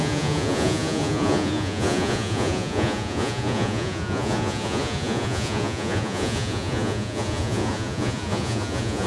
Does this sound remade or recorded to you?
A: remade